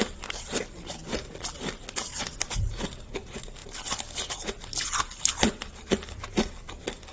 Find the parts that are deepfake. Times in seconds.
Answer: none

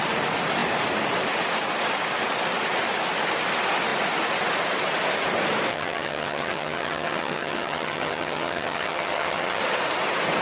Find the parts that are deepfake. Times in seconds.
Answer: 5.7-9.6 (vocoder, HiFi-GAN)

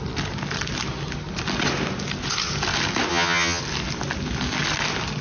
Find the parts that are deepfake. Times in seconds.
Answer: 3.1-3.6 (vocoder, HiFi-GAN)

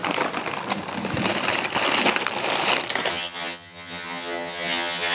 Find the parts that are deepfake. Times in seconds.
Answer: 3.1-5.1 (vocoder, HiFi-GAN)